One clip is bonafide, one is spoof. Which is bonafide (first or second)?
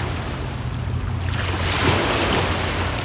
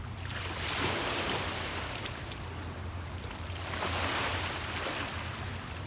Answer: first